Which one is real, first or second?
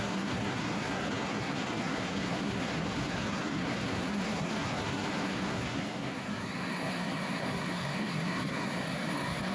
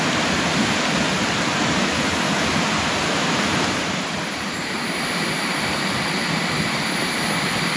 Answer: second